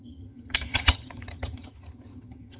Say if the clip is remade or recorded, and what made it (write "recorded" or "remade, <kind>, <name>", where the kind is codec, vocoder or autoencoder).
remade, vocoder, HiFi-GAN